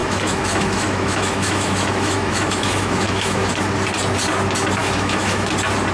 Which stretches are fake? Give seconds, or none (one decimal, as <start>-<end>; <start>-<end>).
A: 0.0-3.5; 4.8-5.5